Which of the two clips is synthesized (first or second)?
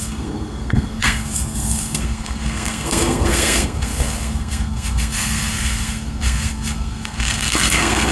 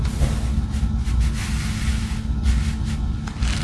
first